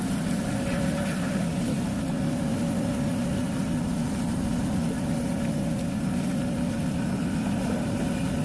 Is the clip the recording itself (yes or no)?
no